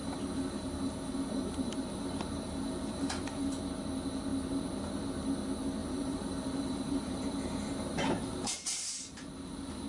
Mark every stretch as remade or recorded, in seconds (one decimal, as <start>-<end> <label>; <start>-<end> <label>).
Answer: 0.0-3.5 remade; 3.5-5.8 recorded; 5.8-9.3 remade; 9.3-9.9 recorded